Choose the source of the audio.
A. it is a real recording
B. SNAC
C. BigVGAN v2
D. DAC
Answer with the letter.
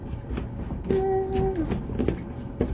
A